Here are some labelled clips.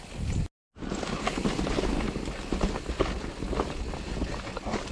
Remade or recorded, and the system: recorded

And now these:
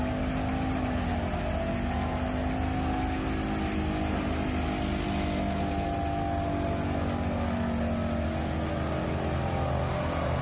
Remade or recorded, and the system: recorded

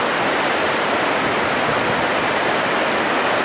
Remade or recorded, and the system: recorded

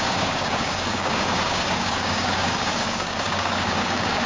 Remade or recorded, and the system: remade, codec, DAC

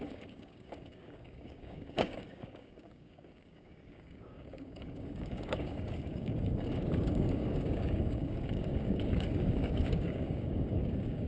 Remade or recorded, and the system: remade, codec, DAC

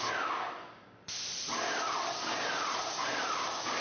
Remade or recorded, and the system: recorded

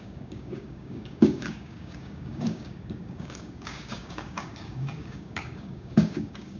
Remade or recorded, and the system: remade, codec, DAC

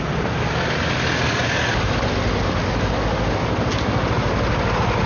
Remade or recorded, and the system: recorded